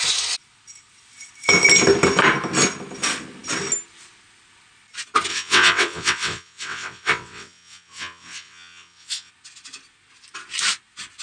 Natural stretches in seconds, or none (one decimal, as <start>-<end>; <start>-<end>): 0.0-5.3; 9.3-11.2